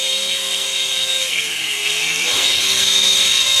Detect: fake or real fake